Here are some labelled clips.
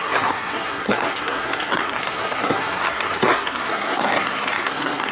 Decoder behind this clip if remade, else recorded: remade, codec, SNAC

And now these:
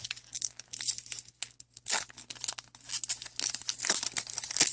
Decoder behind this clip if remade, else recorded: recorded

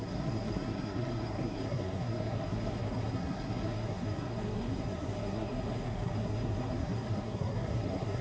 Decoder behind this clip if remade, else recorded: remade, codec, SNAC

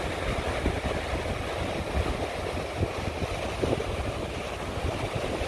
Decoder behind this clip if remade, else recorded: recorded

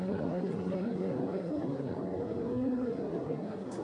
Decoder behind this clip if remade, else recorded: remade, codec, SNAC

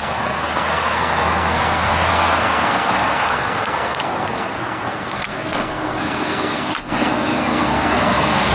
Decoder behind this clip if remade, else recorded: remade, codec, SNAC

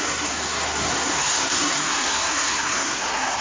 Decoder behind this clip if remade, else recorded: remade, codec, SNAC